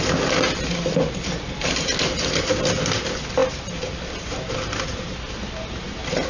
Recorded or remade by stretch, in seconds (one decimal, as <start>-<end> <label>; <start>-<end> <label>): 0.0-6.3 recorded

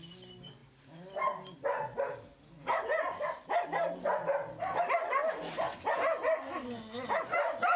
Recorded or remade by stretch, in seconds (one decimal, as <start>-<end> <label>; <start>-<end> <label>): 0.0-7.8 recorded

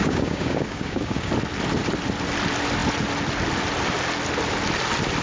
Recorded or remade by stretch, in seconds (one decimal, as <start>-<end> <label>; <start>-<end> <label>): 0.0-1.3 remade; 1.3-5.2 recorded

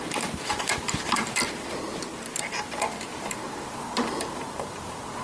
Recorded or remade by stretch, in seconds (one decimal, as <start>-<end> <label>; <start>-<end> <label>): 0.0-1.9 remade; 1.9-2.4 recorded; 2.4-3.1 remade; 3.1-3.6 recorded; 3.6-5.2 remade

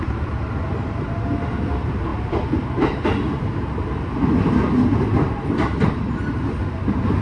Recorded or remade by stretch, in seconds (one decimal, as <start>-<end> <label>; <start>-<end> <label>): 0.0-7.2 recorded

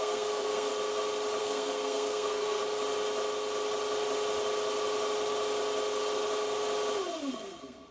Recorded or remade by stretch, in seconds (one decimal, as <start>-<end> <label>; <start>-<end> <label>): 0.0-0.7 remade; 0.7-1.4 recorded; 1.4-2.6 remade; 2.6-7.3 recorded; 7.3-7.9 remade